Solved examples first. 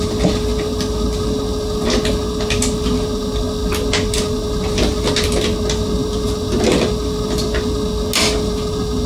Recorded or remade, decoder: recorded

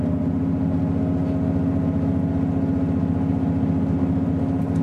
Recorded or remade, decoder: recorded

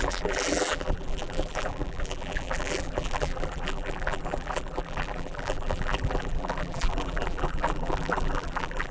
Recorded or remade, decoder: remade, vocoder, BigVGAN v2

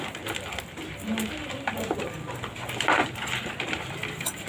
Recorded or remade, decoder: remade, vocoder, BigVGAN v2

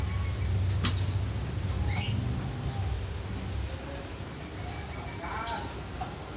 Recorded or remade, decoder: recorded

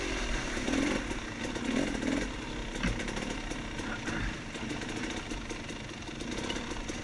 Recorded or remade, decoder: recorded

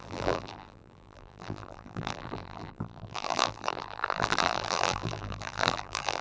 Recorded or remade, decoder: remade, vocoder, BigVGAN v2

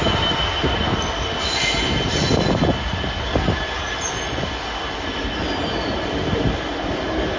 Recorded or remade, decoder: recorded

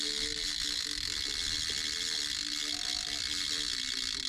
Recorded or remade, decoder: recorded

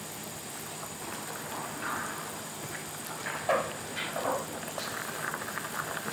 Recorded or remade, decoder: recorded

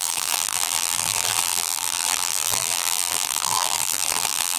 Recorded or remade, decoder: remade, vocoder, BigVGAN v2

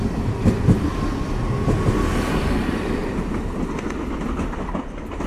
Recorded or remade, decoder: recorded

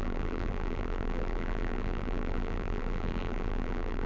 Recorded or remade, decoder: remade, vocoder, BigVGAN v2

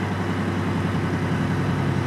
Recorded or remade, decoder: recorded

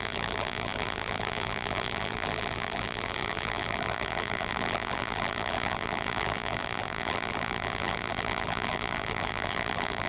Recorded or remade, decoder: remade, vocoder, BigVGAN v2